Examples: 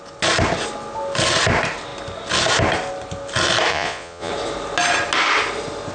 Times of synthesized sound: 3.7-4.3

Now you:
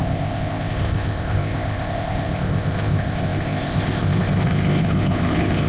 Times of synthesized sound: 0.0-5.7

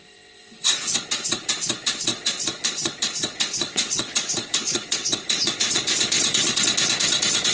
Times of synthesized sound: 2.1-6.6

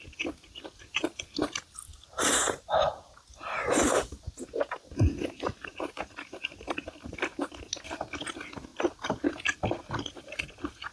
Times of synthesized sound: none

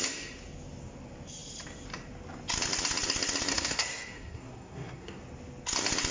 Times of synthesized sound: 3.5-5.2

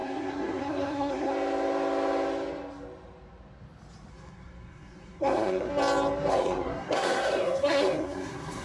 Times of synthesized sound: 0.0-1.3; 4.1-5.7; 6.3-8.6

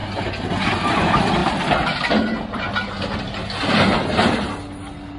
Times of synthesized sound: none